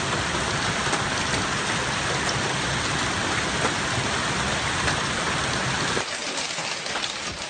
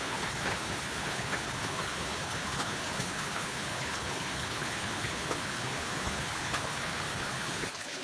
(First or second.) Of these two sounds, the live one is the first